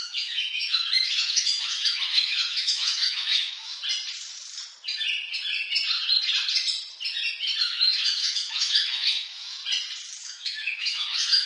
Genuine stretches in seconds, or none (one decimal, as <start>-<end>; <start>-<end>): 3.8-7.6; 9.6-10.2